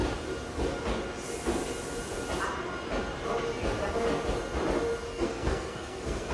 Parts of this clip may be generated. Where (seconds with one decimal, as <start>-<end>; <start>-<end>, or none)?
5.1-6.3